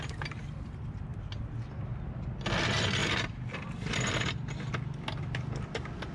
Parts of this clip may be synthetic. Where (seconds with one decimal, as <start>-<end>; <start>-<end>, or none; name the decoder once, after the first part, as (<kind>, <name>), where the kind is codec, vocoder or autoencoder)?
none